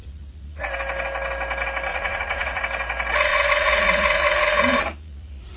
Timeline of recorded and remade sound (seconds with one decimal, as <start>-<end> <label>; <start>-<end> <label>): 0.0-0.6 remade; 0.6-1.9 recorded; 1.9-2.6 remade; 2.6-3.3 recorded; 3.3-5.6 remade